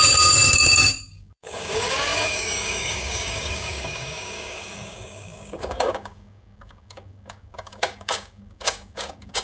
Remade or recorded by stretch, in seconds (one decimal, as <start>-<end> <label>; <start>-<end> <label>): 0.0-9.4 remade